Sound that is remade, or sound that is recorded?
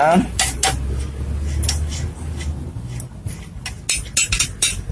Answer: recorded